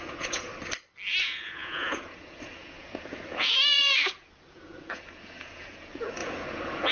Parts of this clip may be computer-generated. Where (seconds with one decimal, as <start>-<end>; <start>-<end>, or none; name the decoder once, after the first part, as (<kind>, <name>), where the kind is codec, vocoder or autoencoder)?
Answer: 0.0-0.5 (vocoder, Vocos); 1.2-6.9